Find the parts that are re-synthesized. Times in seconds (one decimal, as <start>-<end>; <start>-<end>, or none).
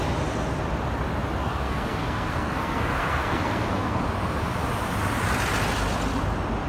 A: 1.4-4.0